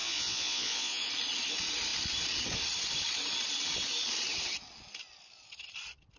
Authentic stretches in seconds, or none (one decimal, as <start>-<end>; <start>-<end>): 1.1-6.2